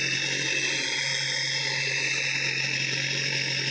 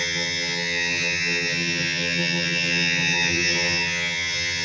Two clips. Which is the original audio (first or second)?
first